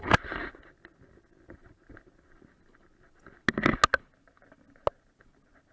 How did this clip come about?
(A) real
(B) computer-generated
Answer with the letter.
A